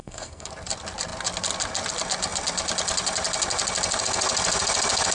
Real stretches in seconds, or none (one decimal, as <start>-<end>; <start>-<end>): 0.5-5.1